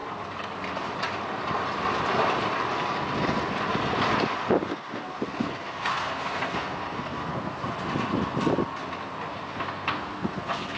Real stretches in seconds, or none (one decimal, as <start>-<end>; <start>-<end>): 0.0-4.7; 7.7-9.3